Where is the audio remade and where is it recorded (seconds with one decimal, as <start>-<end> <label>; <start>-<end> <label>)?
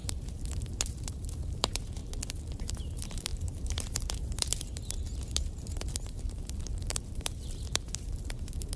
0.0-2.0 remade; 2.0-2.6 recorded; 2.6-8.8 remade